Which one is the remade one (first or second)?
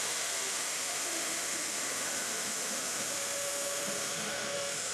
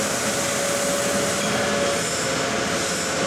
first